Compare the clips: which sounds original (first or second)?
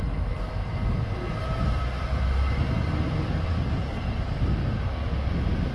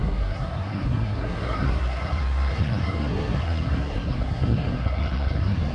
first